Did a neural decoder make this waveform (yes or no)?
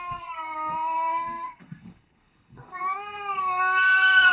yes